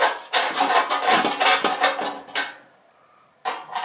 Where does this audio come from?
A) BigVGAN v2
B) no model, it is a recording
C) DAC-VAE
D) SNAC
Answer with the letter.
B